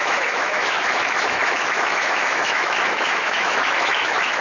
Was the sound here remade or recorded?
remade